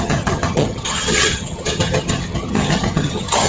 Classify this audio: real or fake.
fake